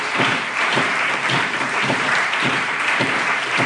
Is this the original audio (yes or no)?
no